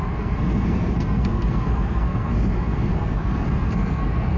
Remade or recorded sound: remade